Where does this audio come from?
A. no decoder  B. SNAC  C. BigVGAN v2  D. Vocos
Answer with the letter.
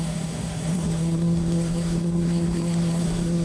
B